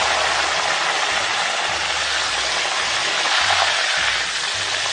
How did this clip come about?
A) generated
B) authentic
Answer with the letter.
B